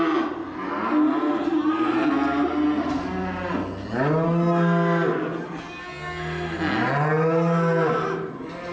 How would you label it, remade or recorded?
recorded